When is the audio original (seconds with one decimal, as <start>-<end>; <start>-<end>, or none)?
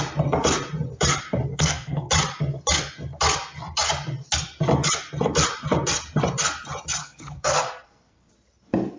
0.0-1.5; 2.1-7.0; 8.3-9.0